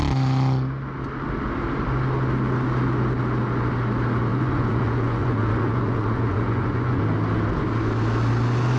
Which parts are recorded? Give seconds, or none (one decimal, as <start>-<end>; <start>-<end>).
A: 0.0-4.3; 7.0-8.8